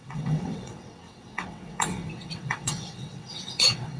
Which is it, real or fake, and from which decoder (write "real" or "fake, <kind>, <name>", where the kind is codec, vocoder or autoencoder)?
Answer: fake, vocoder, WaveNeXt